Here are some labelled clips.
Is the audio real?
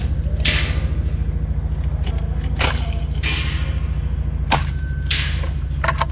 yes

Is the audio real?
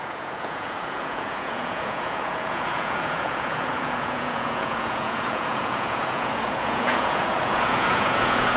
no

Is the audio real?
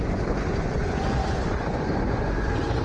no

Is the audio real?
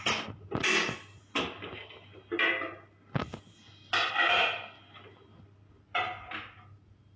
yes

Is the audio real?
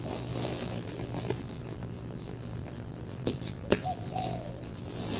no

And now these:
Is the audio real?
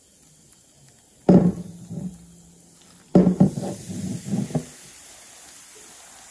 yes